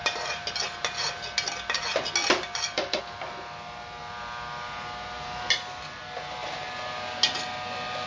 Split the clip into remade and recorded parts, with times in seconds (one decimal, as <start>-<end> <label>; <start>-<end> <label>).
0.0-8.1 recorded